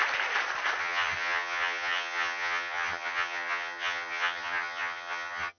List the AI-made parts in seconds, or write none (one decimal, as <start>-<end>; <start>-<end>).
0.8-5.6

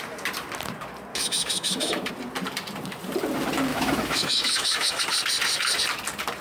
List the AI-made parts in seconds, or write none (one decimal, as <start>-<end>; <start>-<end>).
1.1-2.1; 3.7-5.0

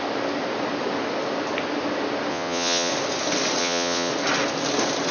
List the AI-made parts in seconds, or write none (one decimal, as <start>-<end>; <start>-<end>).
2.3-2.9; 3.6-4.1

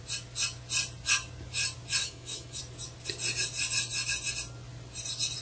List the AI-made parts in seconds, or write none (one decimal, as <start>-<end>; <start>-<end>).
2.0-2.6

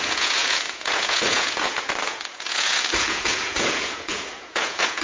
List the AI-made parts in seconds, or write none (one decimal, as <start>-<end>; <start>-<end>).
0.0-5.0

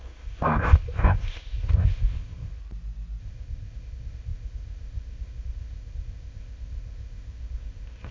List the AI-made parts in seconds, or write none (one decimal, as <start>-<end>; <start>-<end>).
0.0-2.6; 3.2-8.1

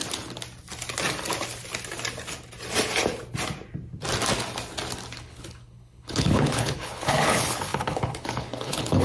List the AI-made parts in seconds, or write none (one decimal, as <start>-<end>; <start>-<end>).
5.2-9.0

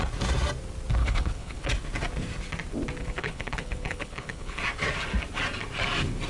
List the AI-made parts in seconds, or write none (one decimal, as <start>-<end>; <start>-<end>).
1.0-1.7; 3.0-4.6